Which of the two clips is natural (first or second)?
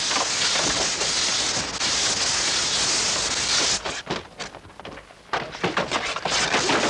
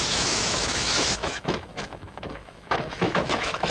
first